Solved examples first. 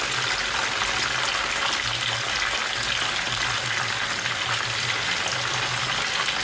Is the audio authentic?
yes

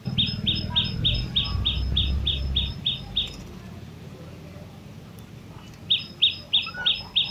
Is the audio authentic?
yes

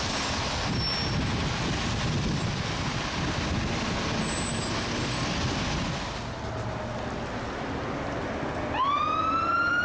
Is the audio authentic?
yes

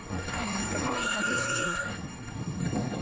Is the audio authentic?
no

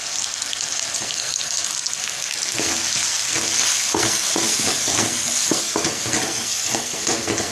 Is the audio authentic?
no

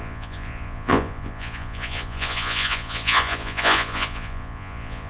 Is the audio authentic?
no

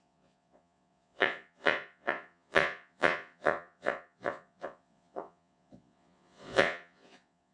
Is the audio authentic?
no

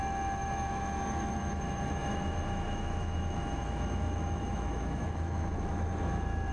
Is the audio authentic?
no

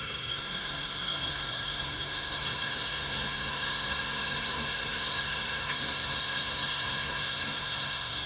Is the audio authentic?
no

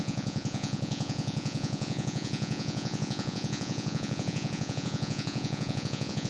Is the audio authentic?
no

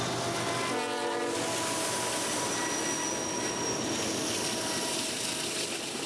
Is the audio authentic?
yes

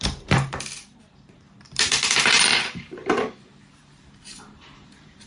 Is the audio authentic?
no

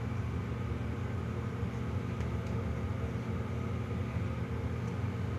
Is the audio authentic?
yes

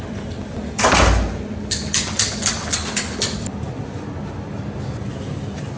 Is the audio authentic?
yes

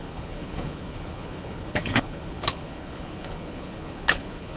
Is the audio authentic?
no